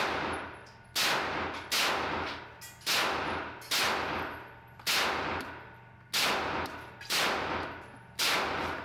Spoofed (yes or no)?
no